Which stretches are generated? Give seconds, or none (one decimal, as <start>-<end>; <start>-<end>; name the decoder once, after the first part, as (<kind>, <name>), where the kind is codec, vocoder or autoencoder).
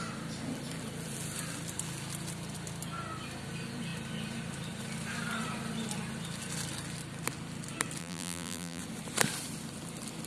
8.0-8.8 (vocoder, BigVGAN v2)